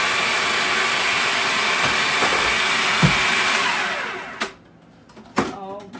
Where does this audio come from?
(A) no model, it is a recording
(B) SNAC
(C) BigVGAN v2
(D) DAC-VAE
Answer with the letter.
A